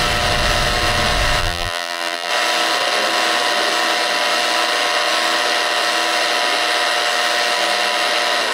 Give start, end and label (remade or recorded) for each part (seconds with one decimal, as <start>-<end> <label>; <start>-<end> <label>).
0.0-1.4 recorded; 1.4-2.3 remade; 2.3-8.5 recorded